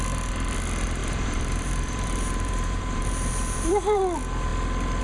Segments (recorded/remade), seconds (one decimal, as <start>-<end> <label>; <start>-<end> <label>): 0.0-1.0 recorded; 1.0-4.0 remade; 4.0-5.0 recorded

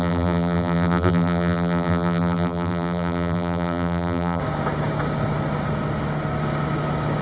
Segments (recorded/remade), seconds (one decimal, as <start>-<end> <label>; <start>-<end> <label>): 0.0-4.4 remade; 4.4-7.2 recorded

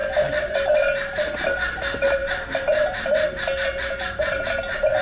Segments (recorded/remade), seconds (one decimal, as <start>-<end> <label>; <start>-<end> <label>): 0.0-2.2 recorded; 2.2-3.1 remade; 3.1-5.0 recorded